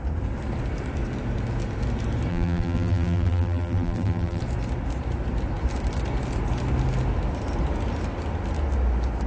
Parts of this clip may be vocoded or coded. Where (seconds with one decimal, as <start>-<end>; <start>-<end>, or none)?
2.3-4.4